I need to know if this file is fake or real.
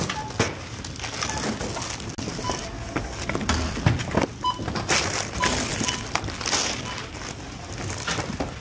real